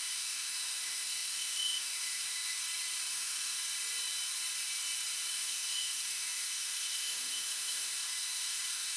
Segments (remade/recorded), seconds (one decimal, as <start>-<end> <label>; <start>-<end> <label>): 0.0-2.6 remade; 2.6-3.1 recorded; 3.1-3.6 remade; 3.6-5.3 recorded; 5.3-9.0 remade